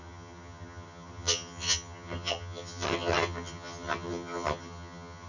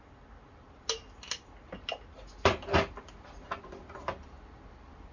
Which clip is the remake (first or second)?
first